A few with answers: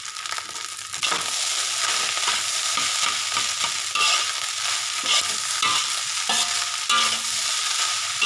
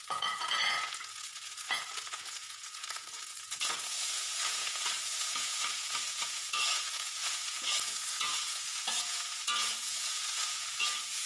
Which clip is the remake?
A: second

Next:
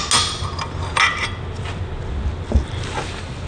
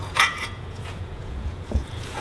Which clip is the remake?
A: second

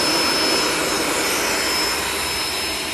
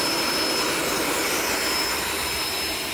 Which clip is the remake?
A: second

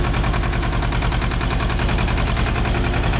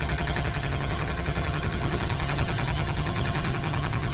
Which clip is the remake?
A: second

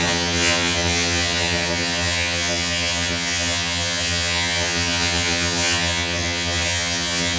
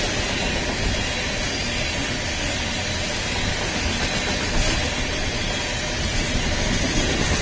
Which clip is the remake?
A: first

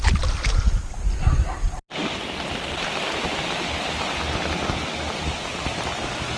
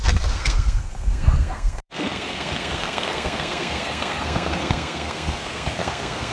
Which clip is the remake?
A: second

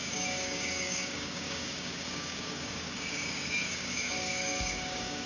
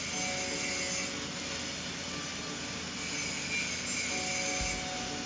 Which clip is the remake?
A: first